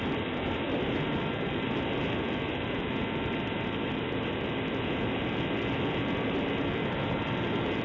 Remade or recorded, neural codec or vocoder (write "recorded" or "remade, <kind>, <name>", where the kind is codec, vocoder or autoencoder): recorded